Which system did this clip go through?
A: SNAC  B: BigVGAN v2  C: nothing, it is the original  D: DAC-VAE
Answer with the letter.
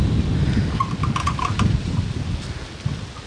C